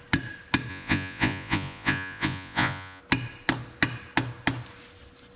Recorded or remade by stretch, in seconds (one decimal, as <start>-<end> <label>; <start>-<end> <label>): 0.0-0.7 recorded; 0.7-3.0 remade; 3.0-5.4 recorded